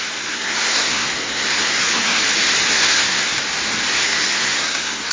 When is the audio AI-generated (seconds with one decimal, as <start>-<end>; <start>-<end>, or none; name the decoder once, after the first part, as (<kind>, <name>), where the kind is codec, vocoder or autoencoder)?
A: 0.0-2.2 (codec, SNAC); 2.7-3.3; 3.9-5.1